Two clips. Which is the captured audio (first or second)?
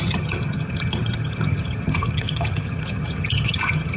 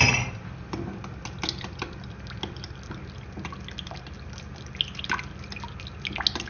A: second